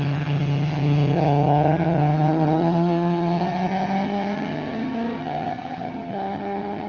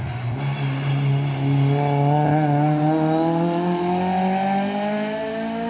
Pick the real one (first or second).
second